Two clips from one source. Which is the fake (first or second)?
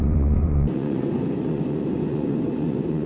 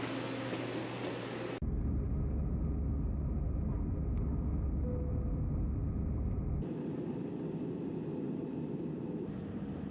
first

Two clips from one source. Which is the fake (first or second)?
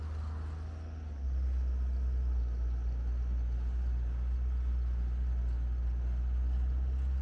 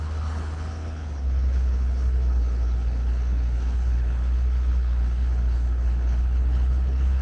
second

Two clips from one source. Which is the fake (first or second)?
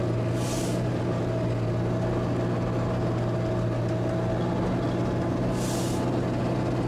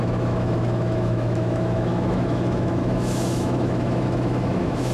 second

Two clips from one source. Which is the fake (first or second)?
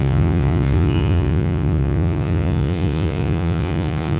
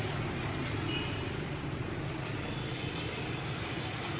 first